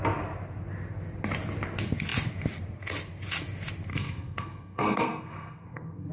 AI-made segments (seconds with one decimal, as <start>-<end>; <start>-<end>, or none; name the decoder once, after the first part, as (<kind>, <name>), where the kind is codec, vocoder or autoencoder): 3.9-6.1 (codec, SNAC)